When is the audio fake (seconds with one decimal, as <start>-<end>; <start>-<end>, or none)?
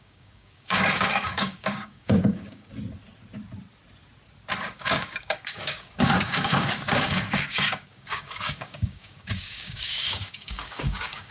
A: 0.0-2.7; 4.6-11.3